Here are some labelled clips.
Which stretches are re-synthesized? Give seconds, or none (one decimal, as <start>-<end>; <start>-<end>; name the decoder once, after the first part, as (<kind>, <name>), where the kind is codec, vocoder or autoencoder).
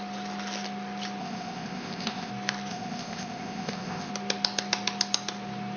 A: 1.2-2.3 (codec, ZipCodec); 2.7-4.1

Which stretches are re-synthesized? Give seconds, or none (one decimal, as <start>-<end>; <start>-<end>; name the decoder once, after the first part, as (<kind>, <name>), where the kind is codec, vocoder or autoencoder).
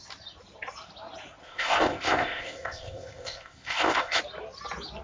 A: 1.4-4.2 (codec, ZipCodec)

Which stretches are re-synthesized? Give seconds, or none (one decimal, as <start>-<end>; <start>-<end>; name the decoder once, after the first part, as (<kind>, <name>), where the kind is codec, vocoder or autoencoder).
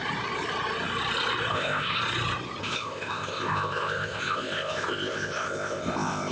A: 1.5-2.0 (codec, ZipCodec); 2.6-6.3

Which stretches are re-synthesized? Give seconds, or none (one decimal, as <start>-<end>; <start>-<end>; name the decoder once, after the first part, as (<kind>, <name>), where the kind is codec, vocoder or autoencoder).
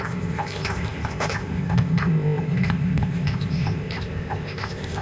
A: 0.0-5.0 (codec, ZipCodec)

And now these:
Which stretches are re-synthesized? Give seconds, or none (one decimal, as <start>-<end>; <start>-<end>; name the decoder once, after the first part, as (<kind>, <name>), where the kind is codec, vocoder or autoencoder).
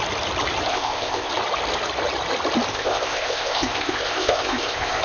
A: 0.7-1.3 (codec, ZipCodec); 2.7-5.0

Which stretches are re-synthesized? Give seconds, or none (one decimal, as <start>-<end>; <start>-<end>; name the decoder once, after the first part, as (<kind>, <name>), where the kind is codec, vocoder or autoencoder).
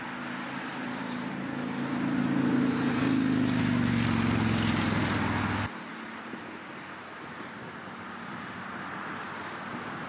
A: none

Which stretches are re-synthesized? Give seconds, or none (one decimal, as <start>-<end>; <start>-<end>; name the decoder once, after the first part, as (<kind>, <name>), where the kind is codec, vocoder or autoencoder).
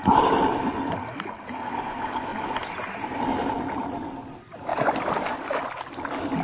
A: none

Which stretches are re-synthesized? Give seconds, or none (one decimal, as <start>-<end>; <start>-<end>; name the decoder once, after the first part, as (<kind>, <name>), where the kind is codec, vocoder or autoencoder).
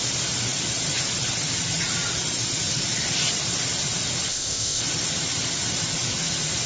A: 4.3-4.8 (codec, ZipCodec)